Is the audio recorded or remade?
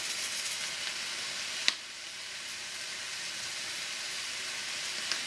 recorded